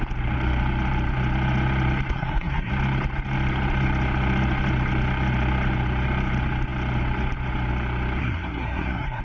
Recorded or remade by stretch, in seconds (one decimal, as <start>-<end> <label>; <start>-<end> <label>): 0.0-2.1 recorded; 2.1-2.7 remade; 2.7-8.2 recorded; 8.2-9.2 remade